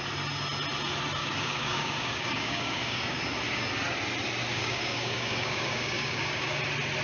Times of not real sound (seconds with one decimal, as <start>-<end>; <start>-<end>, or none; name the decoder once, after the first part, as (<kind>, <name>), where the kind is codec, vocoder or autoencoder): 1.2-3.2 (codec, DAC); 4.5-6.6